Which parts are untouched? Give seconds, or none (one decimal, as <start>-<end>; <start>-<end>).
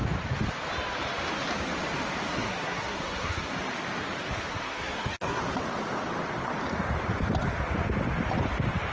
0.0-2.3; 3.5-4.5; 5.4-8.9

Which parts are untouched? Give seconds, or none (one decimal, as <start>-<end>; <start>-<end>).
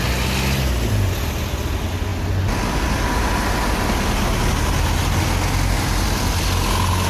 0.0-7.1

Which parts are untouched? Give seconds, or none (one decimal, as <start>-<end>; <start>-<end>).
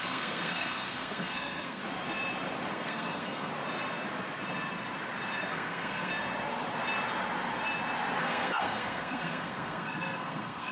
1.8-2.7; 3.5-5.5; 6.1-8.2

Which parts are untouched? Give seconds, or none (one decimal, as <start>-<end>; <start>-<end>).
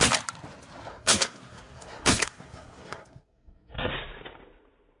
0.0-0.9; 3.9-5.0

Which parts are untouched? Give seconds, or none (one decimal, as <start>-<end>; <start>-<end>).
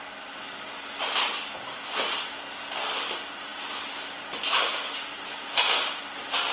0.0-6.5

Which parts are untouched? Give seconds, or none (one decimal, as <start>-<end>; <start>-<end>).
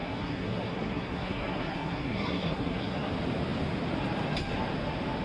3.1-5.2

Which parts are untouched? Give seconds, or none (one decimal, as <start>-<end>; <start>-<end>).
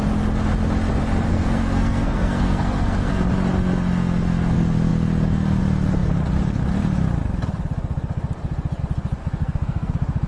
0.0-1.3; 3.1-9.4; 9.9-10.3